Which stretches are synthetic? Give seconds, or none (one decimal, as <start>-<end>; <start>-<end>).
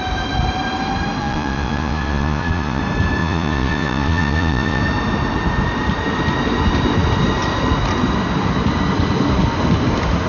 1.2-2.8; 3.2-4.8